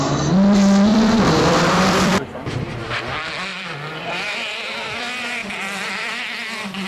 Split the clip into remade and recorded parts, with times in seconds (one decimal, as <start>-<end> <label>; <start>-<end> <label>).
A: 0.0-0.9 recorded; 0.9-2.9 remade; 2.9-3.5 recorded; 3.5-5.0 remade; 5.0-5.4 recorded; 5.4-6.0 remade; 6.0-6.9 recorded